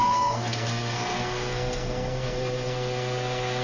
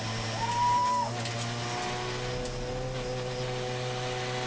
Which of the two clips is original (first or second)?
second